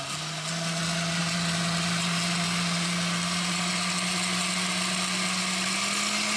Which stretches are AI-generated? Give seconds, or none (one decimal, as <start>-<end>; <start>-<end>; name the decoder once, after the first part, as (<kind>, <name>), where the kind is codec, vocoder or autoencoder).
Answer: none